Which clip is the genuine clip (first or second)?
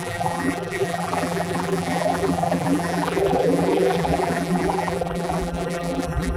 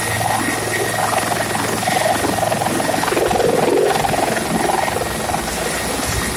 second